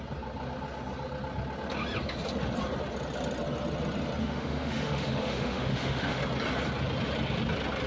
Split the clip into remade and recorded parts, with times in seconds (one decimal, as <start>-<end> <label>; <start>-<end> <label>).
0.0-4.2 recorded; 4.2-6.2 remade; 6.2-7.9 recorded